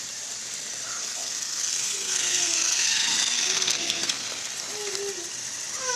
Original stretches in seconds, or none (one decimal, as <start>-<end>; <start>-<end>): 0.0-0.9; 4.5-6.0